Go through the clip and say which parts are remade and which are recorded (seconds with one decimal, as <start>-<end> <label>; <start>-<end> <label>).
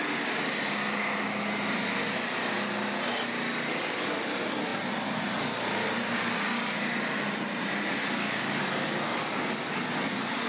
0.0-10.5 recorded